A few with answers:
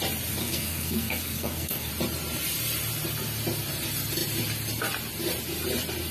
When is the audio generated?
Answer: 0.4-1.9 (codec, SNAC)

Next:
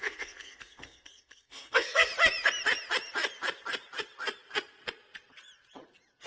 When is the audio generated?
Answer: 0.0-2.1 (codec, SNAC)

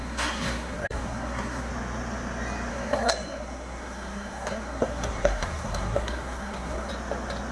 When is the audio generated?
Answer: 0.0-1.7 (codec, SNAC); 2.7-6.9

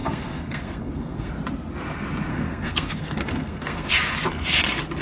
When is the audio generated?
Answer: 0.0-1.3 (codec, SNAC); 2.3-3.9

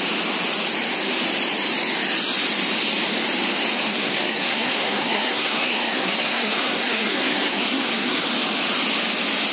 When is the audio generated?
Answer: 3.9-8.2 (codec, SNAC)

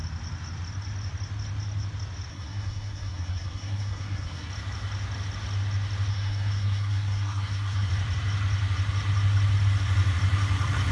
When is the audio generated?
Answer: 2.3-4.5 (codec, SNAC); 6.1-7.9

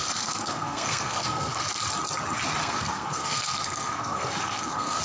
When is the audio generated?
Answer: 0.0-1.6 (codec, SNAC); 2.6-5.0